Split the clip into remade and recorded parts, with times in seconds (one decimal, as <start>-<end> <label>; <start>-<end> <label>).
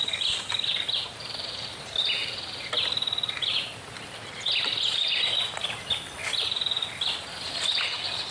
0.0-8.3 recorded